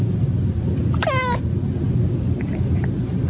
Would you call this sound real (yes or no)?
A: yes